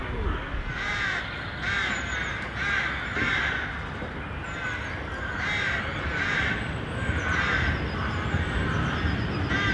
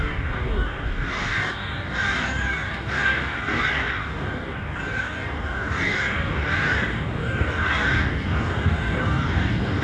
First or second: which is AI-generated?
second